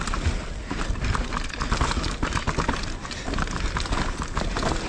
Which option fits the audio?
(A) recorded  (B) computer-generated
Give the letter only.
A